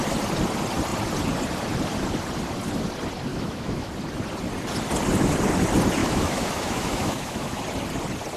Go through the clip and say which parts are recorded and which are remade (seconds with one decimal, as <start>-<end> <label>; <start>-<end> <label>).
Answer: 0.0-3.3 recorded; 3.3-3.9 remade; 3.9-6.0 recorded; 6.0-7.6 remade; 7.6-8.4 recorded